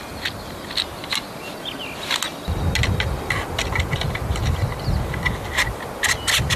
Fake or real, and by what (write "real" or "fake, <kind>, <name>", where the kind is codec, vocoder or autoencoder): real